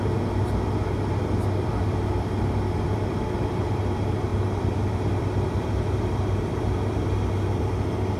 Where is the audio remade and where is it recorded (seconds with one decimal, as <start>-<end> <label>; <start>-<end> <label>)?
0.0-8.2 remade